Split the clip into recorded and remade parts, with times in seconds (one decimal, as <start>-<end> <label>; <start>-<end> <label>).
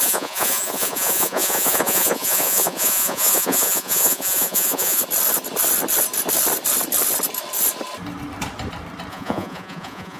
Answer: 0.0-5.0 remade; 5.0-9.1 recorded; 9.1-10.2 remade